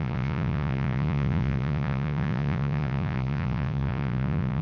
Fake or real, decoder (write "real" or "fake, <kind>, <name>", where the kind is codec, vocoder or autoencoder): fake, vocoder, Vocos